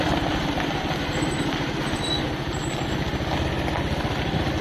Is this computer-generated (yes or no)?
no